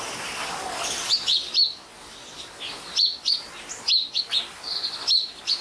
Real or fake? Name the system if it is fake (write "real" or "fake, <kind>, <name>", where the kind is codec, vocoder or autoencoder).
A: real